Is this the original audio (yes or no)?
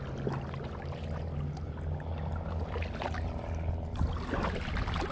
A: yes